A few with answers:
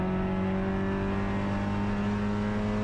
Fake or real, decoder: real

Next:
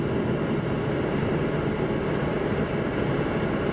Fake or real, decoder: real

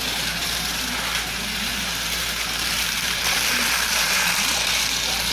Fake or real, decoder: fake, vocoder, BigVGAN v2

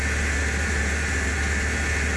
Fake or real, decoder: real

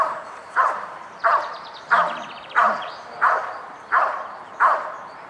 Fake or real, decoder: fake, vocoder, BigVGAN v2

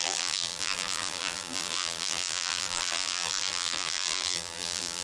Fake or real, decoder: fake, vocoder, BigVGAN v2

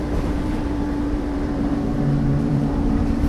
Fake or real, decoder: fake, vocoder, BigVGAN v2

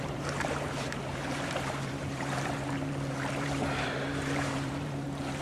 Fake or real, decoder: fake, vocoder, BigVGAN v2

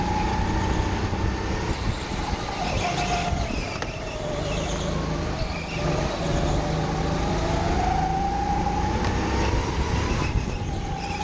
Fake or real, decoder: real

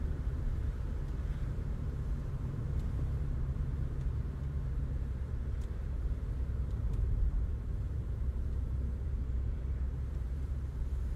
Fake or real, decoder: fake, vocoder, BigVGAN v2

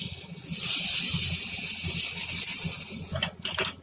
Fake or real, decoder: real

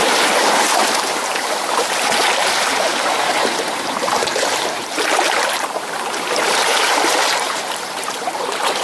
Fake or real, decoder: fake, vocoder, BigVGAN v2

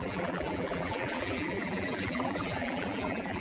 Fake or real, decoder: fake, vocoder, BigVGAN v2